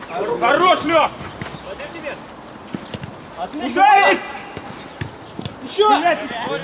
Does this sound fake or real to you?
real